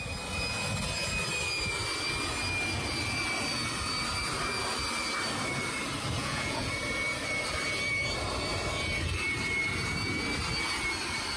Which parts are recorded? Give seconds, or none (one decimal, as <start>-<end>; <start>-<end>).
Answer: 0.0-6.2; 6.7-11.4